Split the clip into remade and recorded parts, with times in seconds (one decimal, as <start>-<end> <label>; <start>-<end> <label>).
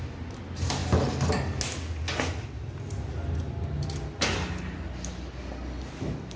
0.0-6.4 recorded